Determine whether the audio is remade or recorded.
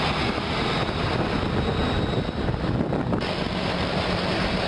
recorded